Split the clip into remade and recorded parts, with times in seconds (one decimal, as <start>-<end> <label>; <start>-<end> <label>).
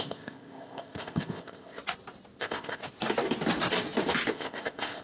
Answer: 0.0-1.8 remade; 1.8-2.4 recorded; 2.4-2.8 remade; 2.8-4.3 recorded; 4.3-5.0 remade